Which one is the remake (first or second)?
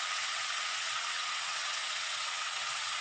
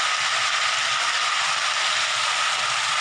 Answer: first